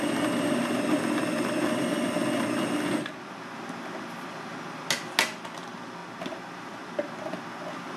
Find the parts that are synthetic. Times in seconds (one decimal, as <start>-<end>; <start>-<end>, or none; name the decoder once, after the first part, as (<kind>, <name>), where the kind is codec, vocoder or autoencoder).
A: none